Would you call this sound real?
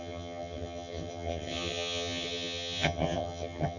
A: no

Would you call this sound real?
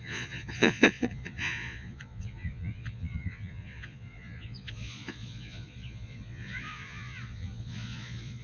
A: no